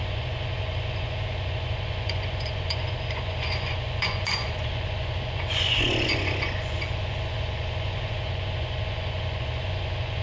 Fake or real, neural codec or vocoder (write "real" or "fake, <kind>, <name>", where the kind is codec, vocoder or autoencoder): fake, vocoder, Vocos